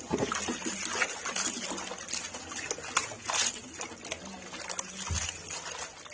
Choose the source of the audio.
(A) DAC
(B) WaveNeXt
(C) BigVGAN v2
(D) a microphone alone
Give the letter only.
D